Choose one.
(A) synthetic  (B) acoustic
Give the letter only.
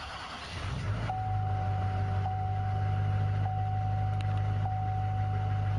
B